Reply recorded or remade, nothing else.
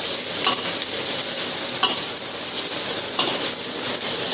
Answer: recorded